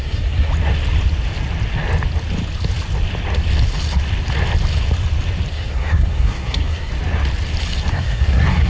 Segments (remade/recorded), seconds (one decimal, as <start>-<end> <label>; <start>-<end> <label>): 0.0-0.5 remade; 0.5-5.5 recorded; 5.5-6.9 remade; 6.9-7.9 recorded; 7.9-8.7 remade